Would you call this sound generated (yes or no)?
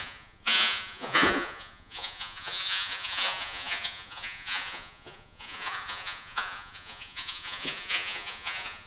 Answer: yes